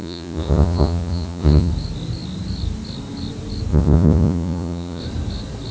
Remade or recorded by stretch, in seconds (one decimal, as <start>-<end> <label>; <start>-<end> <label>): 0.0-1.7 remade; 1.7-3.7 recorded; 3.7-5.0 remade; 5.0-5.7 recorded